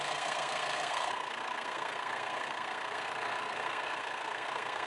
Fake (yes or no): yes